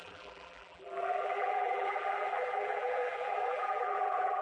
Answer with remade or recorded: remade